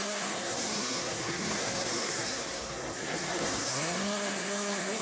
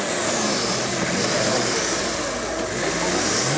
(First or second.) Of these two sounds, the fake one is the first